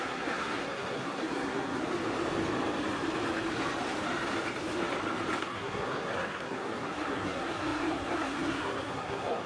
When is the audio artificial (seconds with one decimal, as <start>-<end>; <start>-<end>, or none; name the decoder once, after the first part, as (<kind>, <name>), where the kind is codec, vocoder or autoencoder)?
0.0-1.8 (codec, SNAC); 5.4-9.5